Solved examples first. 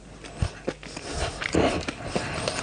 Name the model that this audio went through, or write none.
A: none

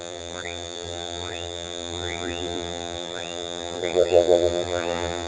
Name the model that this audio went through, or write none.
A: vocoder, BigVGAN v2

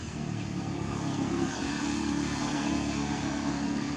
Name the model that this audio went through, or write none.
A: codec, SNAC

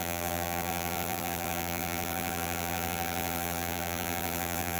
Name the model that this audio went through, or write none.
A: vocoder, BigVGAN v2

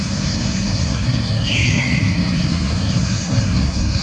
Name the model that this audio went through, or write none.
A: codec, SNAC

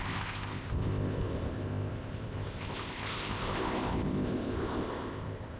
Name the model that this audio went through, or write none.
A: codec, ZipCodec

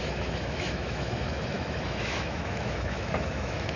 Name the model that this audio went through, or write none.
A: autoencoder, DAC-VAE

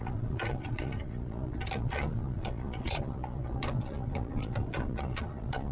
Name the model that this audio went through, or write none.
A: vocoder, Vocos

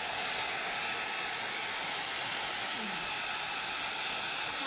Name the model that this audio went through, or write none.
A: none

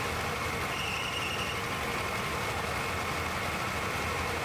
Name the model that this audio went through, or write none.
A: none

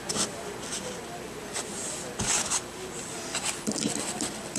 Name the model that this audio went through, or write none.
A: vocoder, BigVGAN v2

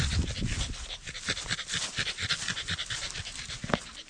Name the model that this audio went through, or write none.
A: none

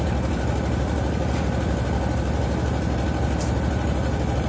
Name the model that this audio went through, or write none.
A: none